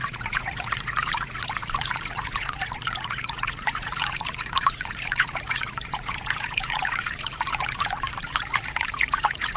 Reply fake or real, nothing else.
fake